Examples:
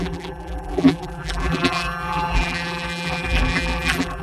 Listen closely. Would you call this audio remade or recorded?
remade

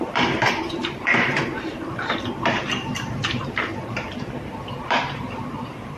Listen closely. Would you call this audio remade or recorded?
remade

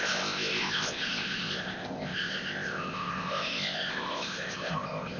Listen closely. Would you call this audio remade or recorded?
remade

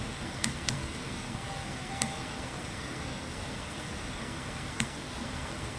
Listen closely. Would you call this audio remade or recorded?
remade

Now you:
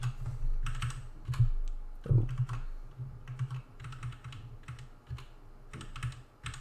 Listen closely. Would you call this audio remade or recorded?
recorded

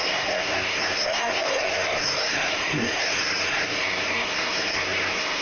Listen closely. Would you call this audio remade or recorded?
remade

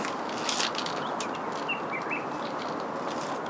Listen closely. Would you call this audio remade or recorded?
recorded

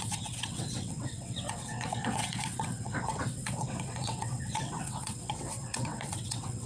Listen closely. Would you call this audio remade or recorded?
remade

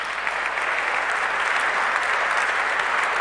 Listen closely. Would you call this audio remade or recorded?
recorded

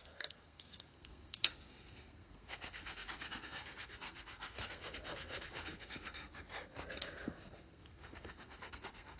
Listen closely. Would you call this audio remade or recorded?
remade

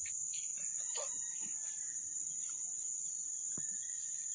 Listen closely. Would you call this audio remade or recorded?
recorded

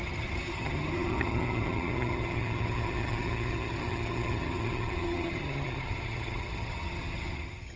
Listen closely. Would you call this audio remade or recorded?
remade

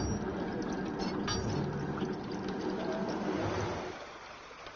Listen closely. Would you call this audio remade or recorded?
recorded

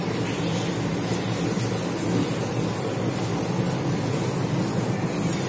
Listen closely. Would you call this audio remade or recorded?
recorded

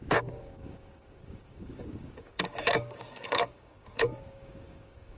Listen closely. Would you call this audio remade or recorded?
remade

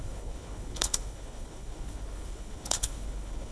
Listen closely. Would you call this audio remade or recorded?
remade